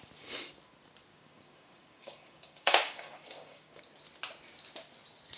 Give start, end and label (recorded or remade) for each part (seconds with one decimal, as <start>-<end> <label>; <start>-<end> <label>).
0.0-1.1 recorded; 1.1-3.8 remade; 3.8-5.4 recorded